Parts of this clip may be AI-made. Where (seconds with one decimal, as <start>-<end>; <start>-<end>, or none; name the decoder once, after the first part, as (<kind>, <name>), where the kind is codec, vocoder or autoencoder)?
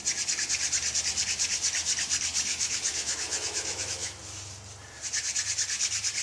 2.5-4.2 (autoencoder, DAC-VAE)